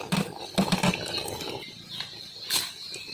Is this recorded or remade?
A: recorded